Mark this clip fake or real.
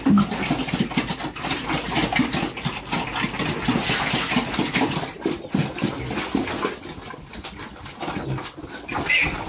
real